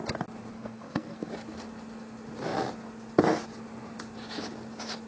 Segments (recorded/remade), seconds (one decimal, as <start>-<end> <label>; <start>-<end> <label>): 0.0-0.5 recorded; 0.5-1.3 remade; 1.3-5.1 recorded